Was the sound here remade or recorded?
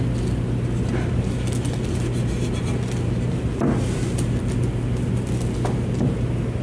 recorded